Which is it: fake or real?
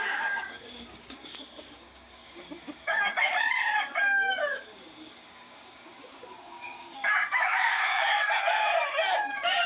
fake